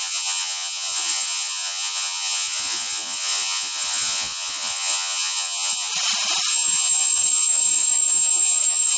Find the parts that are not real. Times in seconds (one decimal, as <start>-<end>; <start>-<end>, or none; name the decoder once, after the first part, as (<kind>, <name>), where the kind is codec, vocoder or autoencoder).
0.0-5.9 (vocoder, Vocos); 6.5-9.0

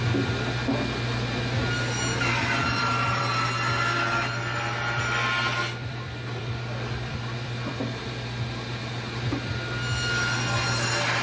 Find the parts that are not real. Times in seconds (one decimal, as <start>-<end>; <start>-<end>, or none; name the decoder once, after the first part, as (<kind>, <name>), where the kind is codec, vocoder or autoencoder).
2.6-3.2 (vocoder, BigVGAN v2); 5.9-7.8

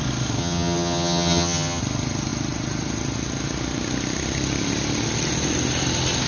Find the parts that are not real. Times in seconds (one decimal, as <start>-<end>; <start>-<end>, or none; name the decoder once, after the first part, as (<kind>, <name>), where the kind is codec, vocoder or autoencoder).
0.4-1.8 (vocoder, HiFi-GAN)

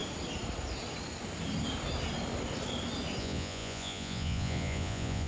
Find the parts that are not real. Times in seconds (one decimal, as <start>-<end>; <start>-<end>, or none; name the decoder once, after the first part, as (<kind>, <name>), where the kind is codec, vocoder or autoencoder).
3.2-5.3 (vocoder, Vocos)

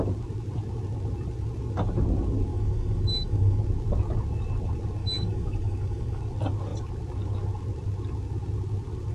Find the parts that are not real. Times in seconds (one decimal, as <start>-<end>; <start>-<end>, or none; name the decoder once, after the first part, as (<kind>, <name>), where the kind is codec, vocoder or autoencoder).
2.5-3.6 (codec, DAC); 5.0-6.2

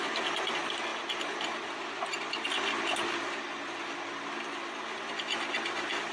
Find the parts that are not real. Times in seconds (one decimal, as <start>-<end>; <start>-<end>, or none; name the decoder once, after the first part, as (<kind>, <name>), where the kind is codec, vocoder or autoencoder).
none

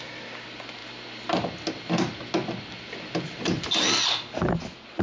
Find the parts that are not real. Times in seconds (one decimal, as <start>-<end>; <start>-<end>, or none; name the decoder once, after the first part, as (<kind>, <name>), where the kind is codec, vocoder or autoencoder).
none

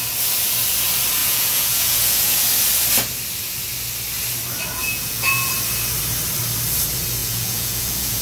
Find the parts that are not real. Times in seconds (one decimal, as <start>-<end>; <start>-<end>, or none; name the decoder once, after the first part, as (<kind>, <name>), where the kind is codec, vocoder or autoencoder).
1.2-2.4 (vocoder, Vocos); 4.8-5.5; 7.2-8.2